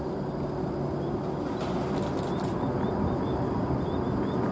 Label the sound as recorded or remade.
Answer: recorded